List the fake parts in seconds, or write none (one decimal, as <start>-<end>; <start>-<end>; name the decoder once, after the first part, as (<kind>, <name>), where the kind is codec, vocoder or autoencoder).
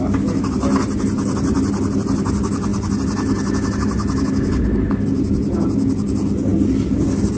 none